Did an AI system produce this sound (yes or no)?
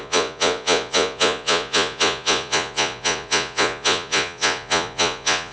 yes